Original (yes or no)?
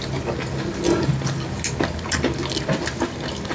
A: yes